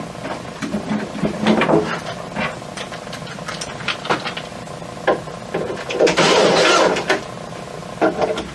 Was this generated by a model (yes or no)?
no